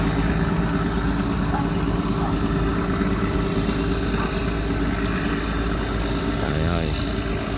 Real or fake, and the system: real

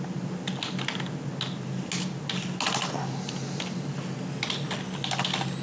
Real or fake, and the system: real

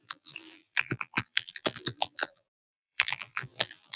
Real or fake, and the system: fake, vocoder, BigVGAN v2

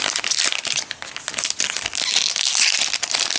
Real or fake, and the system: real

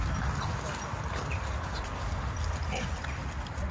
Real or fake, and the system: real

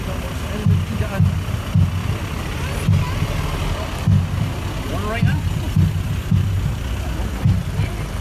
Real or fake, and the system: real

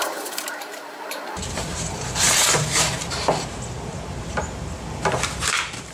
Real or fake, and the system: fake, vocoder, BigVGAN v2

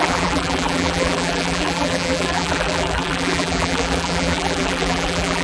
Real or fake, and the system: fake, vocoder, BigVGAN v2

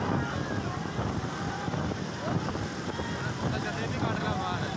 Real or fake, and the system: real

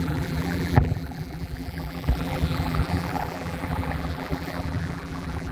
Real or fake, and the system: fake, vocoder, BigVGAN v2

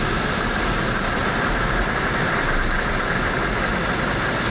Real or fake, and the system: real